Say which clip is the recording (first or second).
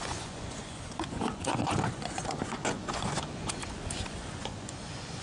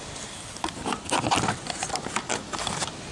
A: second